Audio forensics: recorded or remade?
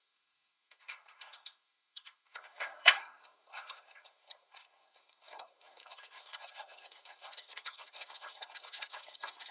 remade